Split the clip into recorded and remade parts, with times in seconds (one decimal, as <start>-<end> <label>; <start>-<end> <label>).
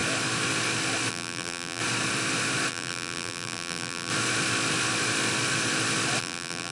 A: 0.0-1.1 recorded; 1.1-1.8 remade; 1.8-2.7 recorded; 2.7-4.1 remade; 4.1-6.2 recorded; 6.2-6.7 remade